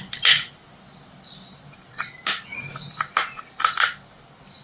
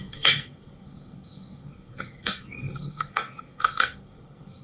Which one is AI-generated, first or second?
second